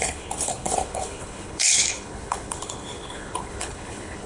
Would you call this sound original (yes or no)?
no